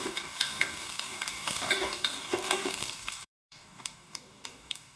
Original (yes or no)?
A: no